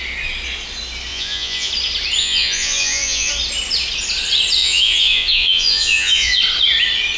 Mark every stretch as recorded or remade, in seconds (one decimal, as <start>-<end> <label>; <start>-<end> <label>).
0.0-1.1 recorded; 1.1-1.7 remade; 1.7-2.2 recorded; 2.2-3.3 remade; 3.3-4.6 recorded; 4.6-6.4 remade; 6.4-7.2 recorded